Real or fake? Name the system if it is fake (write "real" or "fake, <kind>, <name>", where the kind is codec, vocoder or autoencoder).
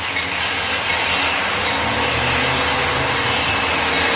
real